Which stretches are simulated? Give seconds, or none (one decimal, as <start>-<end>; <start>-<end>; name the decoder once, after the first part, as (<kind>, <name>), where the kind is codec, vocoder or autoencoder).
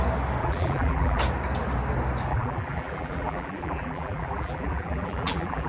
0.4-1.2 (vocoder, BigVGAN v2); 2.3-5.7